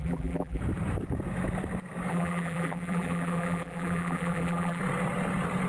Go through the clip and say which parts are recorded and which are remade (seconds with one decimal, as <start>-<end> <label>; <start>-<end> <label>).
0.0-0.6 remade; 0.6-2.1 recorded; 2.1-4.8 remade; 4.8-5.7 recorded